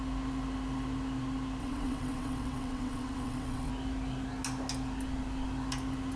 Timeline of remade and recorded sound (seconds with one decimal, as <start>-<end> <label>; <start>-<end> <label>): 0.0-1.6 recorded; 1.6-3.7 remade; 3.7-6.2 recorded